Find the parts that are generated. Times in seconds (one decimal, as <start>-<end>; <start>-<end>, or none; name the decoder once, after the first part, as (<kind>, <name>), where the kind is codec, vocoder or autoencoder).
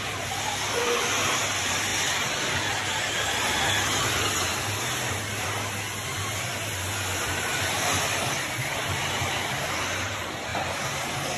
none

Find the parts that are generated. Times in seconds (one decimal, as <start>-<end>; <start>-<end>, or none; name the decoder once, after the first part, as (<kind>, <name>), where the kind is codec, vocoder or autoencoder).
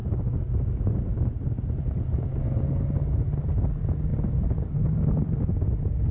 4.1-4.7 (vocoder, BigVGAN v2)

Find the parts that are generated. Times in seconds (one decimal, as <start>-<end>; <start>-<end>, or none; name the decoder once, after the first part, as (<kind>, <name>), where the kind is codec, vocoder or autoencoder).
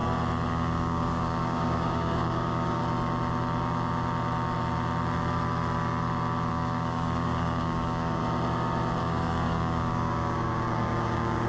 0.5-2.8 (codec, DAC); 6.5-8.2; 9.0-11.5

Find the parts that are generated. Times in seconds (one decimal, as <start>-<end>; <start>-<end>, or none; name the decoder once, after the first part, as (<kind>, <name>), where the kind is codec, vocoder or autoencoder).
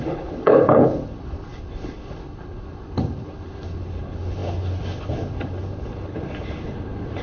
0.0-7.2 (codec, HILCodec)